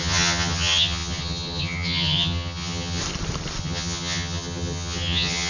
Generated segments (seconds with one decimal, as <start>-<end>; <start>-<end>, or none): 0.0-3.0; 3.6-5.5